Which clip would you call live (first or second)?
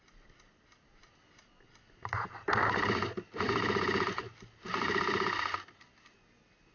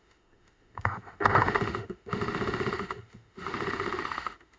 first